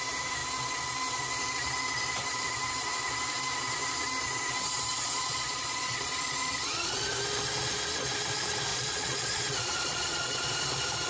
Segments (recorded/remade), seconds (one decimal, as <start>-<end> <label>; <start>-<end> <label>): 0.0-4.9 recorded; 4.9-7.1 remade; 7.1-8.7 recorded; 8.7-10.5 remade; 10.5-11.1 recorded